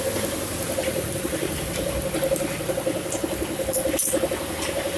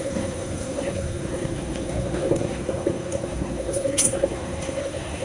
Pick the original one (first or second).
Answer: first